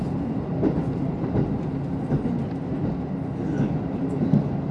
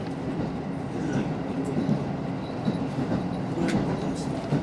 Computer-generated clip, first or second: second